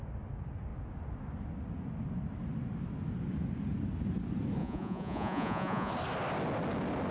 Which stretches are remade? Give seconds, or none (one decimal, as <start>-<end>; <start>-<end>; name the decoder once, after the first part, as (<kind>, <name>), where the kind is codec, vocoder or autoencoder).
4.6-5.9 (vocoder, Vocos)